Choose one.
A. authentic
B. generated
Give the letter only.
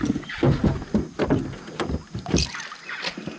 A